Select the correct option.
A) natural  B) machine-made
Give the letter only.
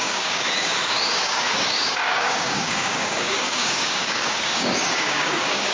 B